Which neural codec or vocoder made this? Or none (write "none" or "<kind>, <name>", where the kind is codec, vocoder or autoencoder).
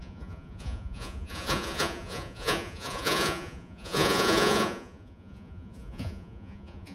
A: vocoder, Vocos